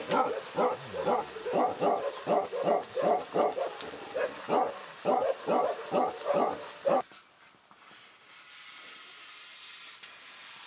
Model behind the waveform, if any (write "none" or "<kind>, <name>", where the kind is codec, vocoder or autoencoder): none